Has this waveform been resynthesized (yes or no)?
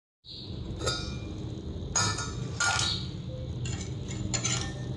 no